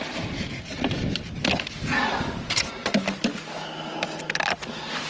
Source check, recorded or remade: recorded